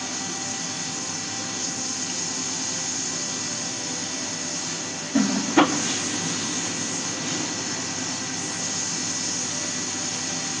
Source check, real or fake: real